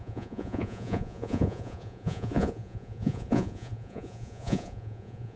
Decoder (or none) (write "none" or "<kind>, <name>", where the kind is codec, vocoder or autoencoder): vocoder, Vocos